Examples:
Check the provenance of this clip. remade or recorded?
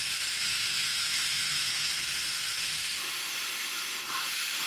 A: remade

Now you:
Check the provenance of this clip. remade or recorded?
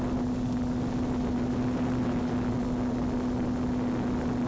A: recorded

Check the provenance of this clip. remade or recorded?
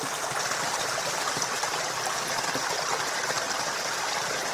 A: recorded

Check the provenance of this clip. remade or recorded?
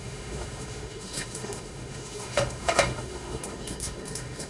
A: remade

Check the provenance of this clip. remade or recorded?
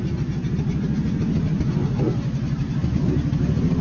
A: recorded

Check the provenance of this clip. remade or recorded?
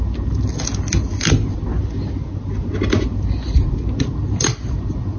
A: recorded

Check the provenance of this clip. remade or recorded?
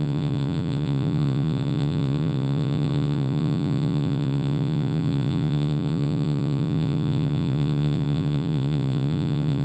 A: remade